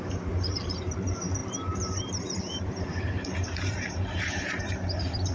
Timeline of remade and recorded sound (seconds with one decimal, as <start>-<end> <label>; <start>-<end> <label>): 0.0-5.3 remade